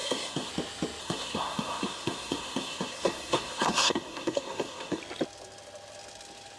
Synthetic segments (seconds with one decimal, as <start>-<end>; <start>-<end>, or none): 0.0-0.5; 1.0-5.0